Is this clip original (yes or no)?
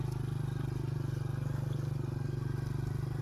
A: yes